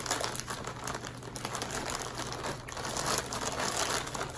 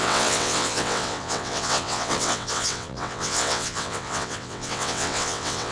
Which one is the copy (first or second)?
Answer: second